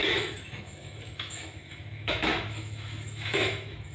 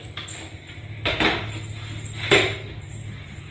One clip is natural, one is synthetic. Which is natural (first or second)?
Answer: second